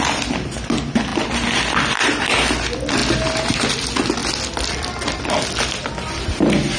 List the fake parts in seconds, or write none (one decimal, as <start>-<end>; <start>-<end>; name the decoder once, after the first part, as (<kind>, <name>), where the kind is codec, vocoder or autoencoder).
none